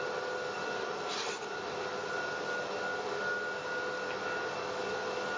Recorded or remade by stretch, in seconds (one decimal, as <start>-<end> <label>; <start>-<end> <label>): 0.0-5.4 recorded